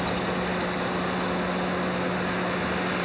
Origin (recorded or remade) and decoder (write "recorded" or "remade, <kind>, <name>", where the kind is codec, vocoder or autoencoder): recorded